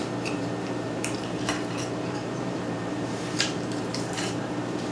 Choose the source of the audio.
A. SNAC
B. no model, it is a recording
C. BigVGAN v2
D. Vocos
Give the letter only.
C